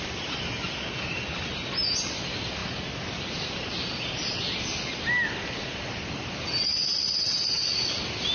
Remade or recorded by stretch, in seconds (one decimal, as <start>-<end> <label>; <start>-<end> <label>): 0.0-8.3 recorded